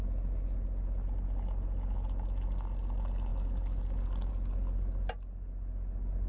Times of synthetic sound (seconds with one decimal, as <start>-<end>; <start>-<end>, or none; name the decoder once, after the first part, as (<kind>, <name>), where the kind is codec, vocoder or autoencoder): none

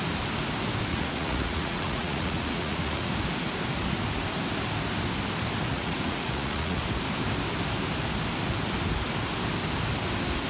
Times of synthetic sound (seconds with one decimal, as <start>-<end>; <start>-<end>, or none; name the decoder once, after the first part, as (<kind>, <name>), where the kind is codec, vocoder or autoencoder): 0.9-3.1 (vocoder, Vocos); 5.7-6.8

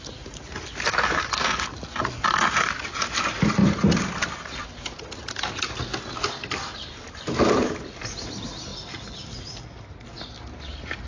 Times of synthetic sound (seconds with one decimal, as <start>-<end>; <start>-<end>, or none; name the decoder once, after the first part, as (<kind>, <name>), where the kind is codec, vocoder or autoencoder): 3.6-4.3 (vocoder, BigVGAN v2); 6.8-7.9; 8.7-9.5

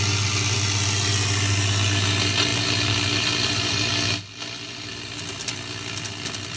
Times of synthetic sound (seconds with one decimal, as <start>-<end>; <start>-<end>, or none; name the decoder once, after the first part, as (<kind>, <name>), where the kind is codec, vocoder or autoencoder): none

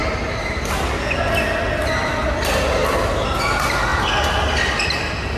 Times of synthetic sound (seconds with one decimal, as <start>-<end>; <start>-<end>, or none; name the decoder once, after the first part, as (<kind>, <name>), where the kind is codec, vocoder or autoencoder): none

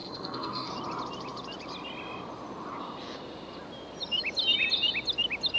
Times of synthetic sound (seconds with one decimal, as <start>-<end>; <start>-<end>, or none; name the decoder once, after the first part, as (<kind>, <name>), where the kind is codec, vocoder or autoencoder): 0.0-0.7 (codec, SNAC)

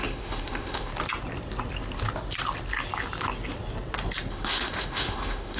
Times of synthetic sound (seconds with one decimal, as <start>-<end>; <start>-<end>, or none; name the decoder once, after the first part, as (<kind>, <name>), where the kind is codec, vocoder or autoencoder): 0.0-0.9 (autoencoder, DAC-VAE); 4.3-5.6